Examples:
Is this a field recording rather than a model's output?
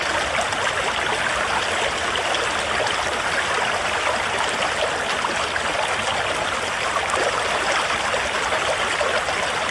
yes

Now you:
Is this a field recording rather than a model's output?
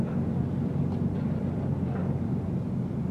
no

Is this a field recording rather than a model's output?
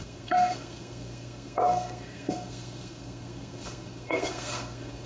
no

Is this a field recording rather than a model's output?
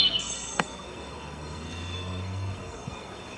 no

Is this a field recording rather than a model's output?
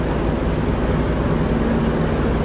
yes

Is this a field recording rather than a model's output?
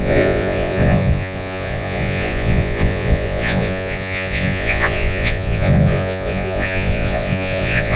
no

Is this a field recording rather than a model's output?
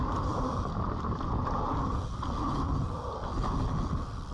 yes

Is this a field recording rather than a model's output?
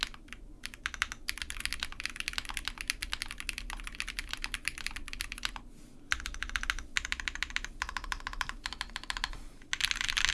yes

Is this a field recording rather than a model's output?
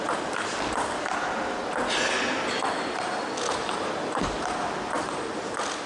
yes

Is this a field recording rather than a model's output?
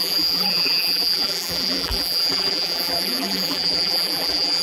no